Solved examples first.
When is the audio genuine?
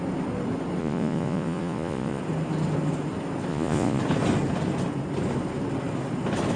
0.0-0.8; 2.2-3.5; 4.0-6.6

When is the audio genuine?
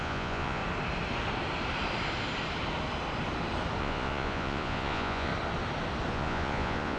0.6-3.8; 5.3-6.1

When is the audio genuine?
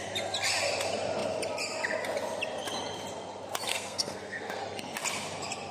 0.0-3.7; 4.6-5.7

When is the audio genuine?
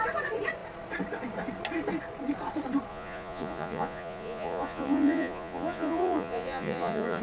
0.0-2.9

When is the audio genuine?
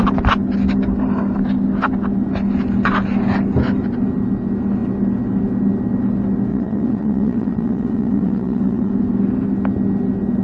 0.0-6.5; 8.9-10.4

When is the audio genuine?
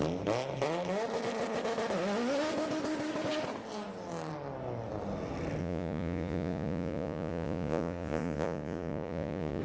0.0-5.6